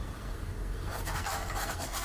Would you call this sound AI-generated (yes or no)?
yes